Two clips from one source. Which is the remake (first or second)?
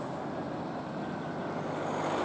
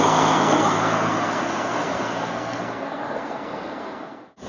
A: second